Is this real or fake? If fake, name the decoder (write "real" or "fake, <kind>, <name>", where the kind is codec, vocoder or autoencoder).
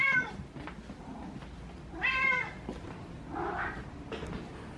real